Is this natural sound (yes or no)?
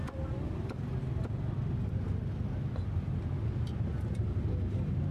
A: yes